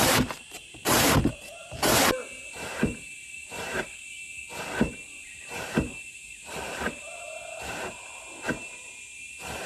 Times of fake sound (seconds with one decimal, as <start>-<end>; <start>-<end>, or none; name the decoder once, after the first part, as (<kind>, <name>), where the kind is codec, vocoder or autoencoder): 0.0-4.4 (vocoder, BigVGAN v2); 4.9-9.7